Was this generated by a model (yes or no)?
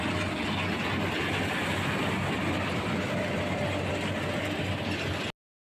no